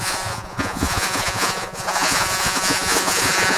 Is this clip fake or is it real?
fake